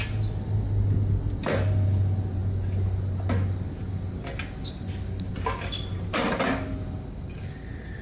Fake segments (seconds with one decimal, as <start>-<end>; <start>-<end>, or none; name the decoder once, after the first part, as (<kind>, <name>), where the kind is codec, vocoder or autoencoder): none